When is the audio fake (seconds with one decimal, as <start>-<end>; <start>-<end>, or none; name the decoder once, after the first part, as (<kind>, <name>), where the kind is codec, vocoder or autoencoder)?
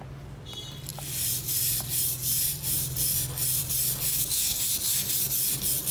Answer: 4.1-4.6 (codec, DAC)